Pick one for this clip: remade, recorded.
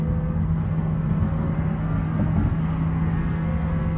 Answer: remade